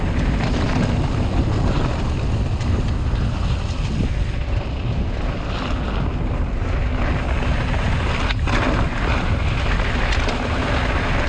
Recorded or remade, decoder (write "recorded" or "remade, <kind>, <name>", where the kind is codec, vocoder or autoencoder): recorded